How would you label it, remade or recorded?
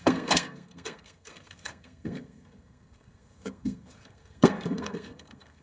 remade